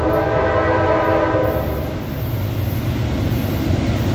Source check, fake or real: real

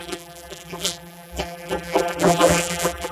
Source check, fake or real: fake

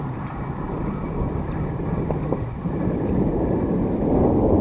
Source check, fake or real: fake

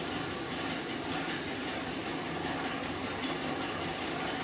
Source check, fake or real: real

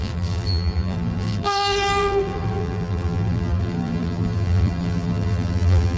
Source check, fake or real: fake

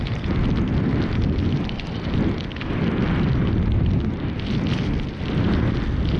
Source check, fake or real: real